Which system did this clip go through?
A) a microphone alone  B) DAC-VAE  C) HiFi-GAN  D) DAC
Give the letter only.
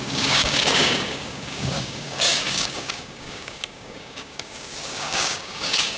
D